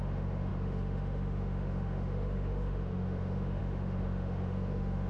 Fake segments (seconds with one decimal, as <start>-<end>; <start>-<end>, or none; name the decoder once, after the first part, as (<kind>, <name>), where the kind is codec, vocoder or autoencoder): 0.0-5.1 (autoencoder, DAC-VAE)